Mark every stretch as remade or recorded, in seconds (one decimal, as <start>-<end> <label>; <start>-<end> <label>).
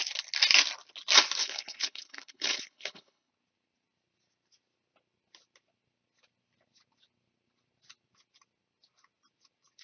0.0-1.4 recorded; 1.4-3.3 remade; 3.3-9.8 recorded